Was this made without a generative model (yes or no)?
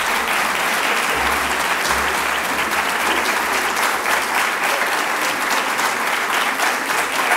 yes